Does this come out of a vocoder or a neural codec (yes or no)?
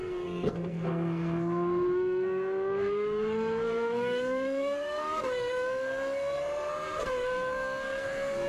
yes